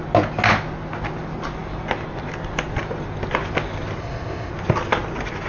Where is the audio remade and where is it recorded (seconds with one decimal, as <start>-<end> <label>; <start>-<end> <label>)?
0.0-4.0 recorded; 4.0-4.5 remade; 4.5-5.5 recorded

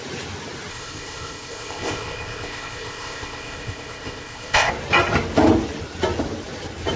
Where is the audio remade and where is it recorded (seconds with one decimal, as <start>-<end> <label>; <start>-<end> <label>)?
0.0-0.7 recorded; 0.7-4.7 remade; 4.7-7.0 recorded

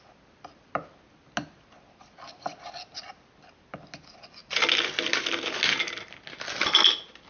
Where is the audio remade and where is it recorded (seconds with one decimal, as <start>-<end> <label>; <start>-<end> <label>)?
0.0-7.3 recorded